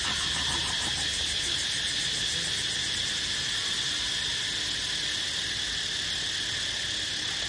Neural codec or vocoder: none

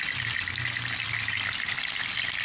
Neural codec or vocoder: none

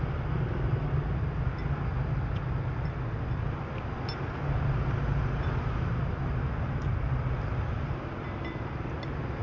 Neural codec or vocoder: none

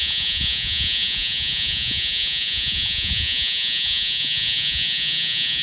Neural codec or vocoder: vocoder, Vocos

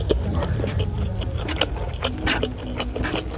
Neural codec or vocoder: none